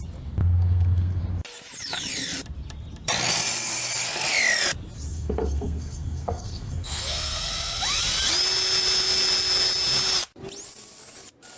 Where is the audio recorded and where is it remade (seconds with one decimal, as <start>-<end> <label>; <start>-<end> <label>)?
0.0-0.4 recorded; 0.4-1.2 remade; 1.2-5.1 recorded; 5.1-7.5 remade; 7.5-11.6 recorded